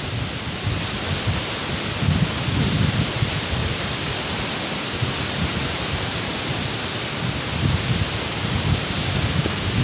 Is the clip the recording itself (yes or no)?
yes